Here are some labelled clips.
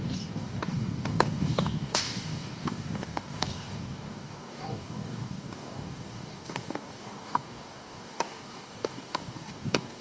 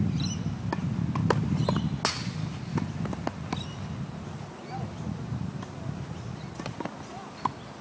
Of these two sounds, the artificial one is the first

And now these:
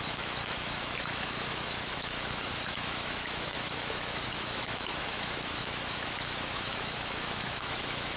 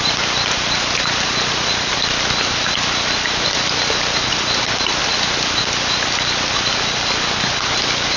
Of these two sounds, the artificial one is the first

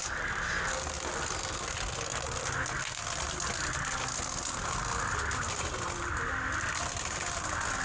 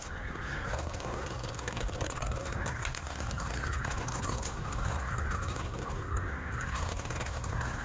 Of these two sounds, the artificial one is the second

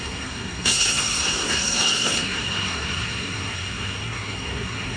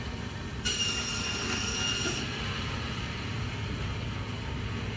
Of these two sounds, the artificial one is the first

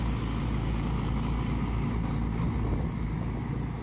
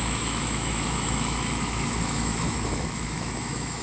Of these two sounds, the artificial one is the second